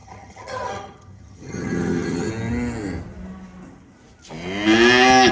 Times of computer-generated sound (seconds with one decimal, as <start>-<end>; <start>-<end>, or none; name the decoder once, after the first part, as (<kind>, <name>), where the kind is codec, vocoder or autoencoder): 0.0-2.3 (vocoder, HiFi-GAN)